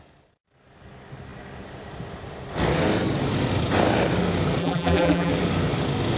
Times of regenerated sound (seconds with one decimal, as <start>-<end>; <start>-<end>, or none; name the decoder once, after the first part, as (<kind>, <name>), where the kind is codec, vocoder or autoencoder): 4.6-5.3 (vocoder, BigVGAN v2)